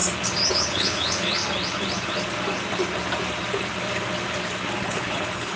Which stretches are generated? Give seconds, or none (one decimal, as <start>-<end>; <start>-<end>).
0.5-1.4; 4.8-5.6